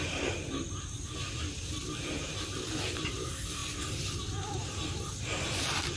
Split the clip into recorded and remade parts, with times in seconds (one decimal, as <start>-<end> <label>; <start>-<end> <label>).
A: 0.0-6.0 recorded